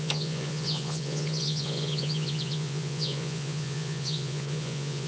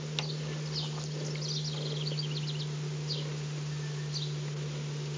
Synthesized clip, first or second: first